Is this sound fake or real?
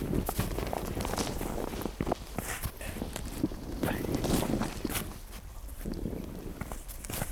fake